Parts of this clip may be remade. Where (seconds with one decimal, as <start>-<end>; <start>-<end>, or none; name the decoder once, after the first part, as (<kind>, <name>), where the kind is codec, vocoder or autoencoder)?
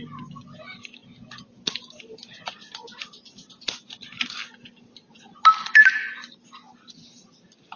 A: none